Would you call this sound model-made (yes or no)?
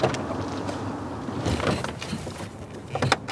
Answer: no